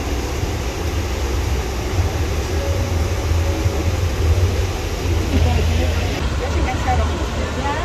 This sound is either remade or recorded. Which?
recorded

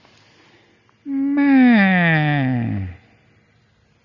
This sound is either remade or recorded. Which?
recorded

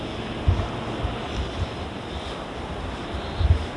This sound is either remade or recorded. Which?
recorded